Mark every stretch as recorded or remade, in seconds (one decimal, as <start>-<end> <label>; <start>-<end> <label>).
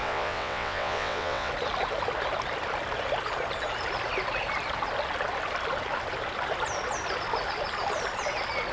0.0-1.5 remade; 1.5-8.7 recorded